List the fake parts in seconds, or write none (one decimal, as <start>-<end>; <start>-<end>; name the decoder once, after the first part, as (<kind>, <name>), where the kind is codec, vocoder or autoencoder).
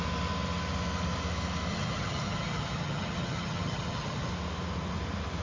1.7-4.3 (vocoder, HiFi-GAN)